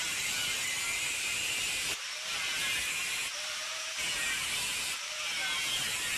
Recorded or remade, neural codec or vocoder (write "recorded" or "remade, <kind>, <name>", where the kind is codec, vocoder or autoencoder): remade, vocoder, BigVGAN v2